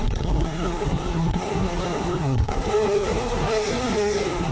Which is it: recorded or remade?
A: remade